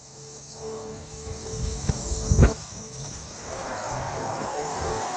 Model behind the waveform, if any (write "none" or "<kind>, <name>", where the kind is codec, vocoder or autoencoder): codec, DAC